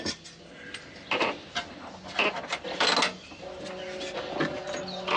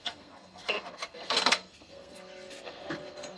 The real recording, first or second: first